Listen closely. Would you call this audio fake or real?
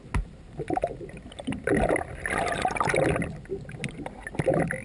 real